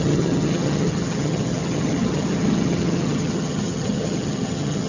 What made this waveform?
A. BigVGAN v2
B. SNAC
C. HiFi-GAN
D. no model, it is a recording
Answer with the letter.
C